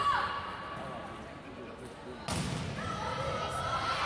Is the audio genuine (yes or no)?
yes